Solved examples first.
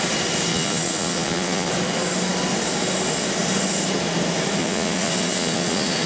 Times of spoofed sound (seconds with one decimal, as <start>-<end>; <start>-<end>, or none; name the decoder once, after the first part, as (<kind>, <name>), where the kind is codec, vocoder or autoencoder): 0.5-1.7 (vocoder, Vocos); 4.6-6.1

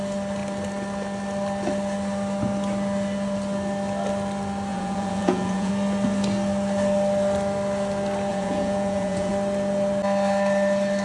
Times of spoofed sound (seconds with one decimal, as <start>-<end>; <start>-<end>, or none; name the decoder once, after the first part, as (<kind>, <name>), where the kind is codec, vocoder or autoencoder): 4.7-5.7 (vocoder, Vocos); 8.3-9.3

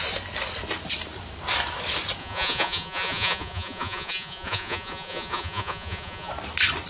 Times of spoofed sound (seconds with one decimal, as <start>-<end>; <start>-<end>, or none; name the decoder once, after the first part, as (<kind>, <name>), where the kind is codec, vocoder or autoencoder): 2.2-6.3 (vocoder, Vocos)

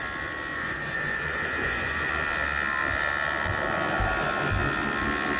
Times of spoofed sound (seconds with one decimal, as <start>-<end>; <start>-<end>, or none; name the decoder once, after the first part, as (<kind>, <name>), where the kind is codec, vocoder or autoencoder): 0.5-2.1 (vocoder, Vocos)

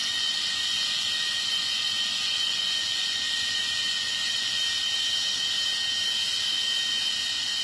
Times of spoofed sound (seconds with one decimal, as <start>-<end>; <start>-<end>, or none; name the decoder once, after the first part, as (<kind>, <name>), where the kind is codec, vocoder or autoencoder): 0.0-4.6 (vocoder, Vocos)

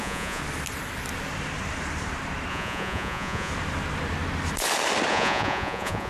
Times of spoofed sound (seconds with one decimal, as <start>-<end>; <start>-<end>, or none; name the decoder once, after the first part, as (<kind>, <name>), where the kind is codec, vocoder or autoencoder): 0.0-0.4 (vocoder, Vocos); 2.5-3.5; 5.1-6.1

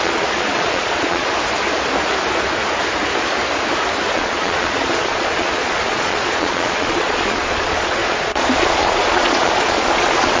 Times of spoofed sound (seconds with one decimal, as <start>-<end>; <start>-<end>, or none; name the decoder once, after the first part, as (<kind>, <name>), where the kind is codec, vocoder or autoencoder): 0.0-1.2 (vocoder, Vocos); 4.1-10.4